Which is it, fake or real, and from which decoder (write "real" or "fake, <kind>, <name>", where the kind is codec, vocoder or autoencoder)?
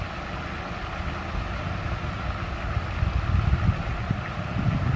real